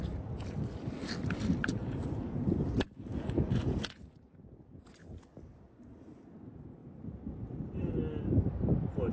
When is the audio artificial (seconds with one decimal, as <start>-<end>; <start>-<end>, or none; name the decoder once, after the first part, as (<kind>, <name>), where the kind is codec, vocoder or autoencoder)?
1.8-2.4 (vocoder, Vocos); 3.1-4.0